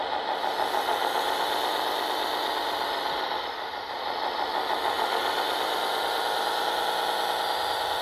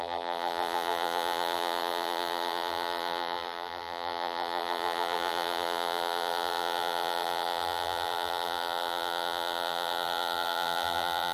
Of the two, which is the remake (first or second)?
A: second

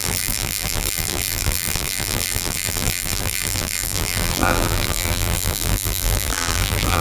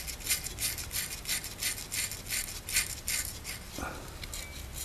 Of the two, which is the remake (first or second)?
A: first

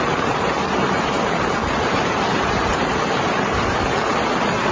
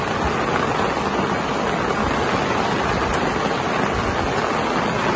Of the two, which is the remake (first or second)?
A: first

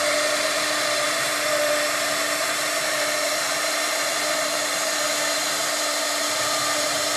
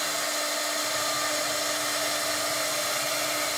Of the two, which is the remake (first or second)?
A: first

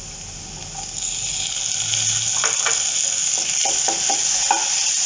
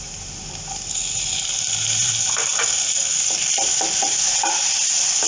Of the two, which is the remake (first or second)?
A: second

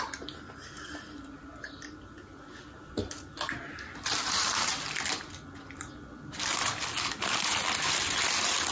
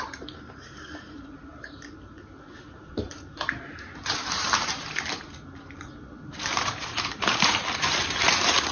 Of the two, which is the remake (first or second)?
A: second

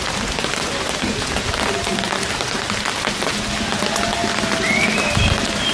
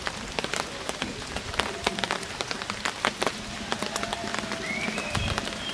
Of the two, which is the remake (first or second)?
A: second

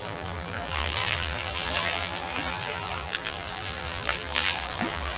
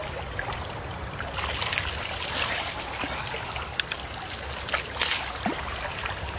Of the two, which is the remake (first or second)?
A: first